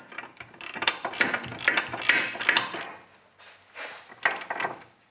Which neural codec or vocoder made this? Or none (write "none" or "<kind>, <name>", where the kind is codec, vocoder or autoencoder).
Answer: none